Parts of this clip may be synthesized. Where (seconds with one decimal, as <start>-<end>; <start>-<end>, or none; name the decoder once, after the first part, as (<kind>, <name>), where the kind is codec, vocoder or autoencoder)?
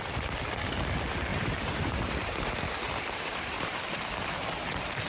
1.3-3.8 (vocoder, BigVGAN v2)